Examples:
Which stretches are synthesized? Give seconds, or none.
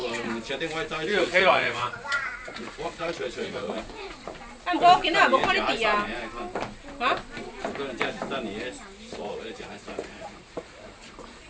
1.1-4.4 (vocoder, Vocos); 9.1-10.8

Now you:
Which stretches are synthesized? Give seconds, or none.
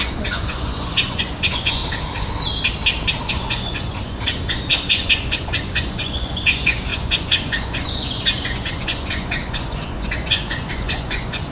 0.0-1.8 (vocoder, Vocos); 3.3-11.5